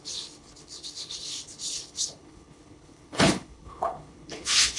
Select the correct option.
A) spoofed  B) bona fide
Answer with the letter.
A